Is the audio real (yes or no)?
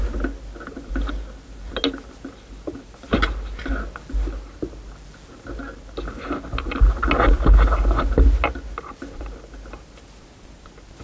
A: yes